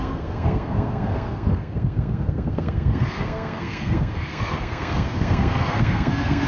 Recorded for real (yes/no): no